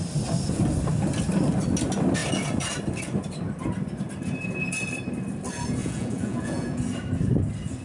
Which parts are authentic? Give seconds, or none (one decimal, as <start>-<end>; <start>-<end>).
0.0-5.8; 6.8-7.8